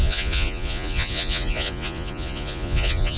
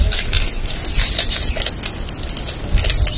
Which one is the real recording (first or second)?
second